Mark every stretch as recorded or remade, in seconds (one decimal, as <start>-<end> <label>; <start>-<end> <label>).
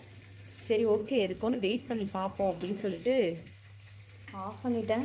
0.0-1.0 recorded; 1.0-4.0 remade; 4.0-5.0 recorded